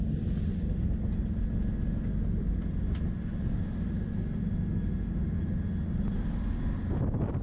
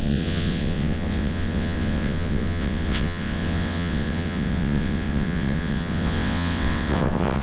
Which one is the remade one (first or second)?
second